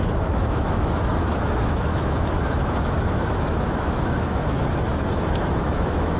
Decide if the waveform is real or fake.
fake